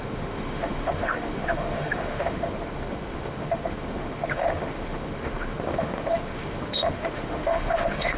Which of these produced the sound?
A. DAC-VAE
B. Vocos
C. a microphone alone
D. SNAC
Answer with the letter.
A